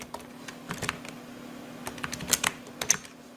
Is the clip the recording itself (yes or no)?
yes